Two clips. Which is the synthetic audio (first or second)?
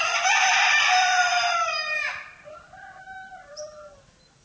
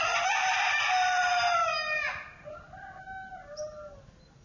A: first